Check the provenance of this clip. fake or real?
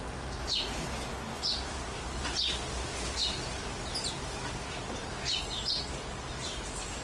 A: real